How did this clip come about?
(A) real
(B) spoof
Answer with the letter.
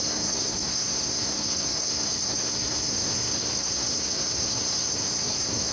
B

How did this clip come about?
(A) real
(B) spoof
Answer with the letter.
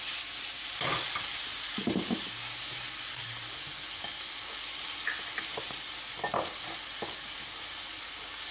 A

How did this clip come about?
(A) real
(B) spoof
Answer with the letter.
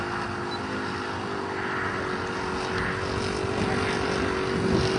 A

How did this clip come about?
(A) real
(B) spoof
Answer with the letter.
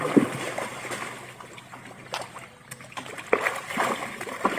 A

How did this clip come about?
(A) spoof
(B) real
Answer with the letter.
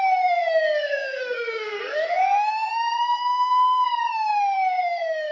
A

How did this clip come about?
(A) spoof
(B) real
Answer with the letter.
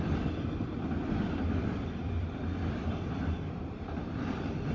A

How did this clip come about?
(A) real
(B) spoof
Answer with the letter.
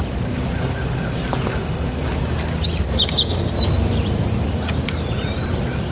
A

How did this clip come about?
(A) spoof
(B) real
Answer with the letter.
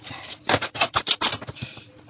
A